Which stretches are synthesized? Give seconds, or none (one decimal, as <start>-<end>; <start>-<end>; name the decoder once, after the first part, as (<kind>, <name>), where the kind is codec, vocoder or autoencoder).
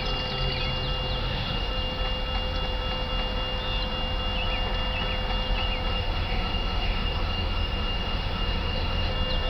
1.2-1.7 (autoencoder, DAC-VAE); 5.9-9.1